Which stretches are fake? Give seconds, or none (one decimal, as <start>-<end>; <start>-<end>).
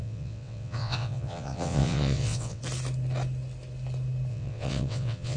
0.0-2.6; 4.3-5.4